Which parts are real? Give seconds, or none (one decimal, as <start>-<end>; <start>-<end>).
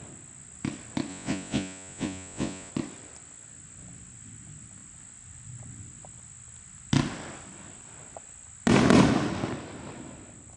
0.0-1.1; 2.7-10.6